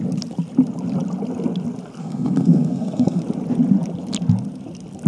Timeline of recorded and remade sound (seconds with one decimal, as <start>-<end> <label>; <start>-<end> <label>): 0.0-2.0 recorded; 2.0-3.2 remade; 3.2-5.1 recorded